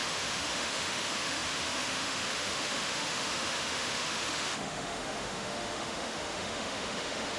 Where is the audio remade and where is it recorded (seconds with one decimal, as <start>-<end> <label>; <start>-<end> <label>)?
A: 0.0-7.4 remade